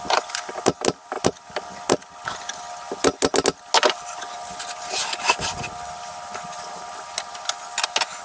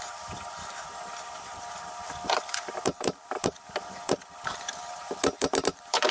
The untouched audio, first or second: first